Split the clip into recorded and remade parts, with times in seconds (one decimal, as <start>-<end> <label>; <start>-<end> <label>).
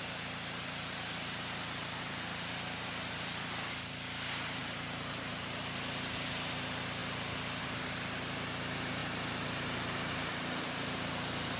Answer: 0.0-4.6 recorded; 4.6-5.6 remade; 5.6-9.0 recorded; 9.0-11.6 remade